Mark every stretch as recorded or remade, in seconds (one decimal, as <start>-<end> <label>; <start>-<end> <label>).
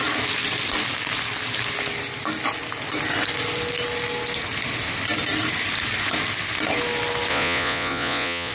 0.0-7.3 recorded; 7.3-8.5 remade